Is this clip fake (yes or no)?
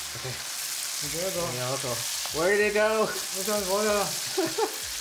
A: no